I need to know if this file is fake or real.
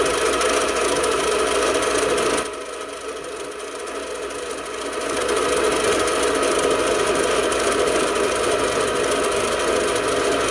real